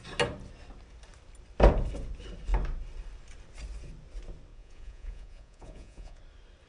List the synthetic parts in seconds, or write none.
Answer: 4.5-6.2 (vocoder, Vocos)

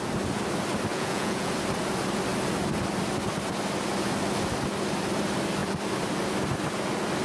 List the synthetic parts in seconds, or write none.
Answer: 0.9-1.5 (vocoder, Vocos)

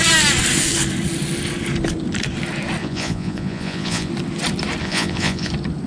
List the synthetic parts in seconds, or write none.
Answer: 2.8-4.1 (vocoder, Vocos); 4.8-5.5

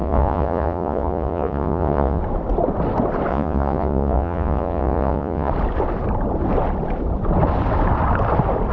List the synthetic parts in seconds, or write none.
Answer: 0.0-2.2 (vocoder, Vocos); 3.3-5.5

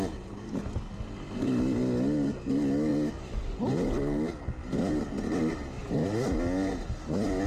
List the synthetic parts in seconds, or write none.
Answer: none